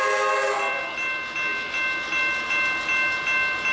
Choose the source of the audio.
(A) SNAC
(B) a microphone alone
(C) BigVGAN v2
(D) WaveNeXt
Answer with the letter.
B